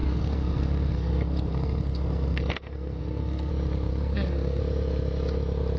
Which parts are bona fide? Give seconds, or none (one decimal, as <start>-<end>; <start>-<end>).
3.5-3.9; 4.6-5.8